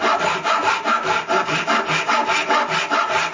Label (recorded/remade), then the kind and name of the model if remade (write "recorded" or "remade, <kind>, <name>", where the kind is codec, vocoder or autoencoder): recorded